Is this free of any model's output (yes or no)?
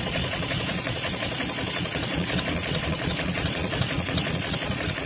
no